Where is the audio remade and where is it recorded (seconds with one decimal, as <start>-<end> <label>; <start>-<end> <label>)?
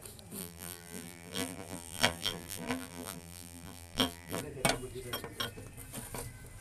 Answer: 0.0-0.4 recorded; 0.4-4.4 remade; 4.4-6.6 recorded